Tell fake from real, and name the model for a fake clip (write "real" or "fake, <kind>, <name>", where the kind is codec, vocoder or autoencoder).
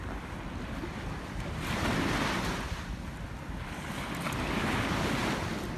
real